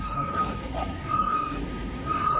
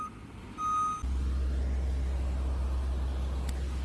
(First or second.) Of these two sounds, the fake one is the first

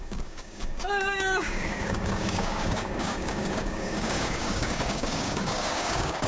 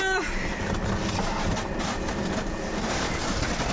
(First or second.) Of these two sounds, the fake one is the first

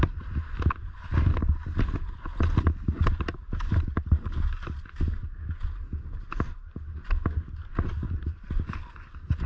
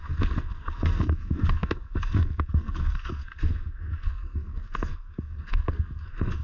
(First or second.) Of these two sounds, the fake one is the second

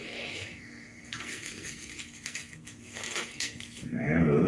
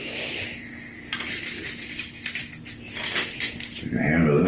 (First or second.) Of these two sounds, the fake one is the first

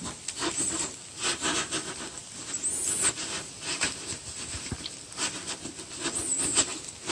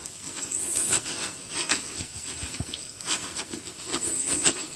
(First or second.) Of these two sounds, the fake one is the second